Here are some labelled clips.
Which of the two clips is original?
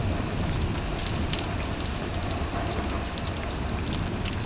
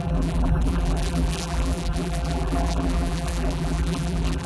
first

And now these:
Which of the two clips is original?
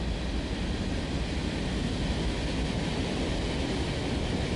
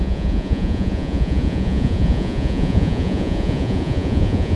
first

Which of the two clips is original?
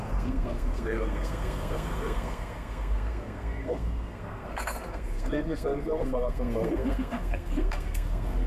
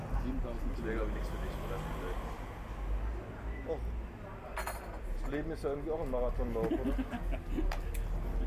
second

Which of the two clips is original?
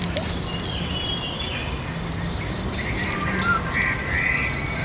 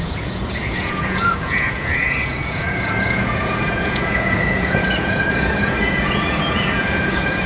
first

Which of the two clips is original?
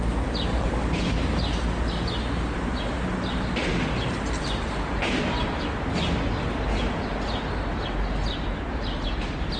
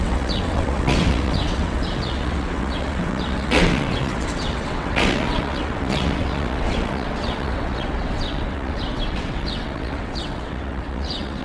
first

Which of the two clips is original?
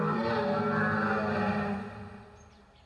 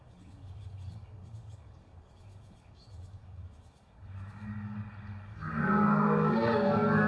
first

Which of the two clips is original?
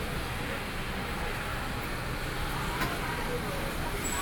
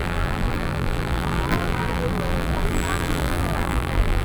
first